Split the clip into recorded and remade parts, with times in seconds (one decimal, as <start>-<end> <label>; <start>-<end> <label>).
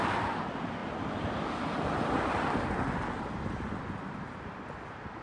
0.0-5.2 recorded